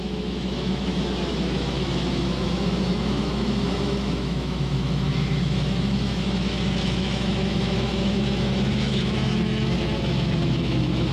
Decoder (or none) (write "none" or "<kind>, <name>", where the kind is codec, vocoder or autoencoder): autoencoder, DAC-VAE